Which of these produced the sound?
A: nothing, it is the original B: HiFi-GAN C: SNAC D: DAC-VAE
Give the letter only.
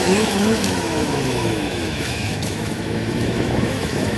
D